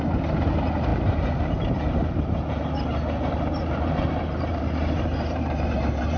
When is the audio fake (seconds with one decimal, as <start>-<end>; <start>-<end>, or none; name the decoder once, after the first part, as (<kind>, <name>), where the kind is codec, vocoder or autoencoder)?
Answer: 0.0-6.2 (vocoder, BigVGAN v2)